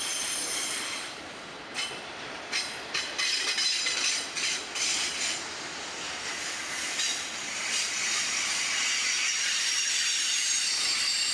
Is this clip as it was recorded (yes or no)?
no